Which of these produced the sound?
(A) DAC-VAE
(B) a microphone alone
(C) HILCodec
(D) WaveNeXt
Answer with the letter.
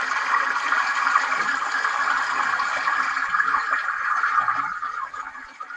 B